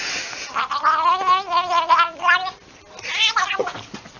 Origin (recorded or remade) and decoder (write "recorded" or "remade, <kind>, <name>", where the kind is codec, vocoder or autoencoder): recorded